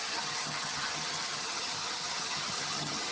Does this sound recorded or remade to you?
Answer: remade